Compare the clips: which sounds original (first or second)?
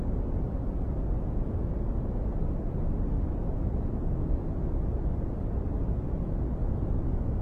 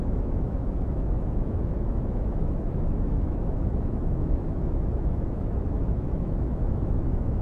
first